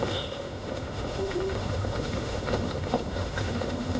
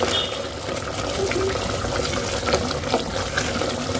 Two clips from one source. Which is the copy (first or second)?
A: first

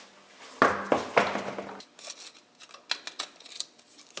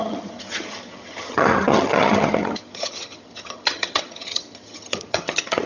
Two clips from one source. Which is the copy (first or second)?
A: second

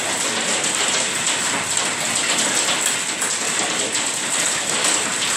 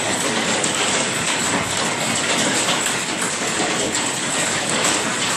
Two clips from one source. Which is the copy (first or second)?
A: second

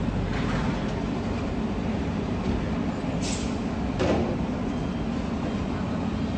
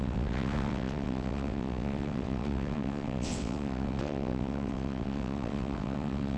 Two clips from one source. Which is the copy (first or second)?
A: second